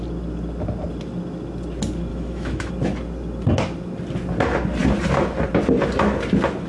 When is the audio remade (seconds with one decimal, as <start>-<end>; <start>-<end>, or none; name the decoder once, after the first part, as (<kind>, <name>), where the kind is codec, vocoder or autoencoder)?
2.1-2.7 (autoencoder, DAC-VAE)